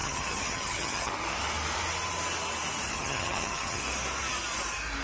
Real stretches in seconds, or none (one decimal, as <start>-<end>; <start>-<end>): 1.1-2.9; 3.8-5.0

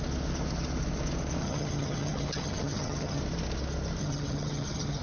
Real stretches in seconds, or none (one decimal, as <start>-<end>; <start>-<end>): 0.0-1.4; 3.2-4.0

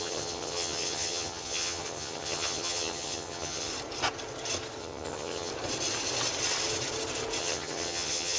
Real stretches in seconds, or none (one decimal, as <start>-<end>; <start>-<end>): 3.7-4.8; 5.5-7.4

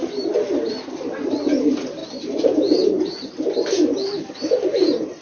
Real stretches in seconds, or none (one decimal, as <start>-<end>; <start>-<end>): 0.0-5.2